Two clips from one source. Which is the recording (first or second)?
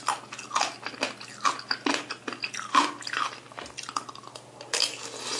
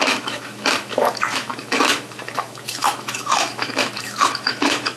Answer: first